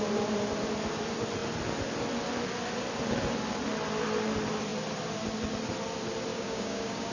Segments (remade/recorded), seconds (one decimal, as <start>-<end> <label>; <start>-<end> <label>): 0.0-6.3 recorded; 6.3-7.1 remade